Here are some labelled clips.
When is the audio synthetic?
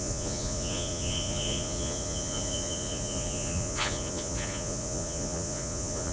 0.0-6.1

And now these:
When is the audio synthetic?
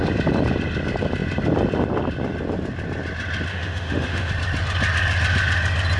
3.5-4.3